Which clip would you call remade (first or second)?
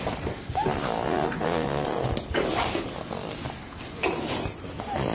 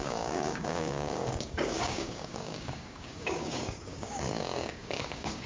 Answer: second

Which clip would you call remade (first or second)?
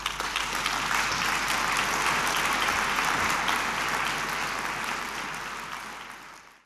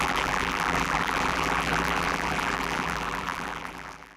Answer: second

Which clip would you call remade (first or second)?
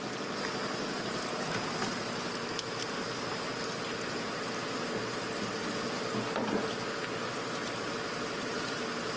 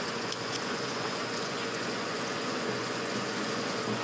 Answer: second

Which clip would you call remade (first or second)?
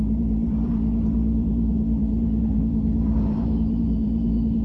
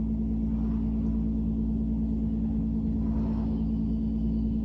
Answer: first